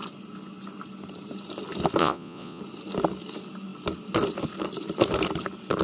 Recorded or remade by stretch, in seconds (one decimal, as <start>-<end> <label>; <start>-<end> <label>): 0.0-2.0 recorded; 2.0-2.6 remade; 2.6-5.8 recorded